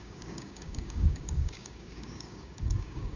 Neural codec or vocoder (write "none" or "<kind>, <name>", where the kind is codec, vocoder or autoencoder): codec, DAC